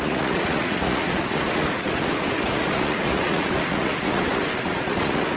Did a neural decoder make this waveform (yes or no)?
yes